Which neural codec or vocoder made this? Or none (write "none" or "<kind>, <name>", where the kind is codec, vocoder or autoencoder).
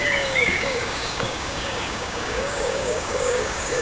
codec, DAC